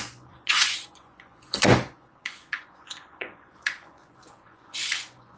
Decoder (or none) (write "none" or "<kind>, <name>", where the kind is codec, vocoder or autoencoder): vocoder, Vocos